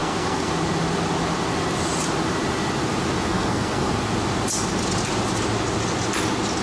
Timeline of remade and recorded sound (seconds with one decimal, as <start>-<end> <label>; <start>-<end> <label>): 0.0-0.5 remade; 0.5-3.3 recorded; 3.3-4.0 remade; 4.0-6.6 recorded